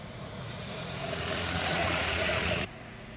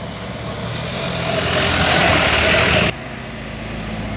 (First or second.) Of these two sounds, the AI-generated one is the first